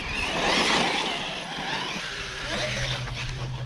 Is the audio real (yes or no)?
yes